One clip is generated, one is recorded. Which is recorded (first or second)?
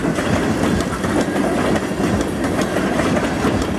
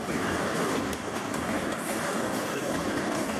first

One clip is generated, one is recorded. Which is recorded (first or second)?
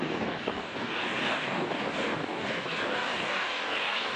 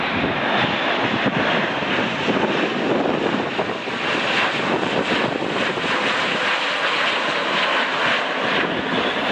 second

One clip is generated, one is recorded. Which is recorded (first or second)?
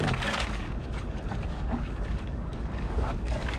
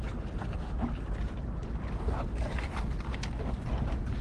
second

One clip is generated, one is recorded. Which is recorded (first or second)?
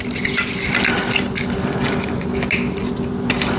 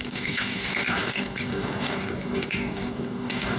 first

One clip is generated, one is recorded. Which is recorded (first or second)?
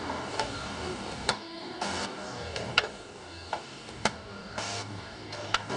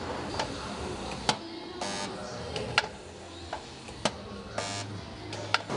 second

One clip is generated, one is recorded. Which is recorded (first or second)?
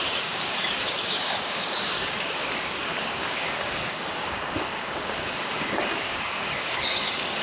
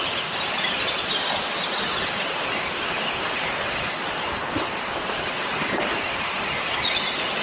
second